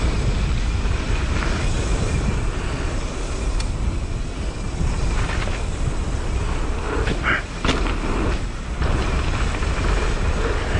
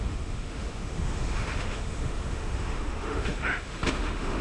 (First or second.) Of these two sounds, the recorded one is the first